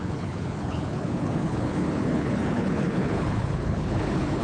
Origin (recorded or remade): remade